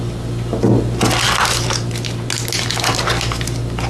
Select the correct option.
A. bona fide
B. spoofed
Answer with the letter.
A